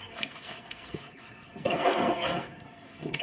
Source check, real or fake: fake